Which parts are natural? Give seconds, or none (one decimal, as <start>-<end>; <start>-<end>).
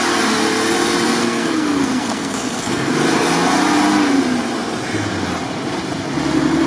0.0-1.2; 2.9-6.7